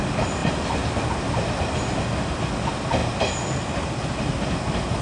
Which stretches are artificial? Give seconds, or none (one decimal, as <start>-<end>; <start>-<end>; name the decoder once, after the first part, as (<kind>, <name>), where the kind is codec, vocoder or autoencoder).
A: none